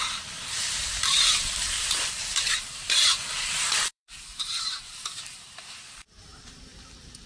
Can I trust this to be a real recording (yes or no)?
no